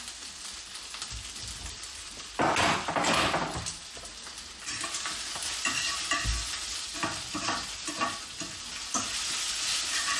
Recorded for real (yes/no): yes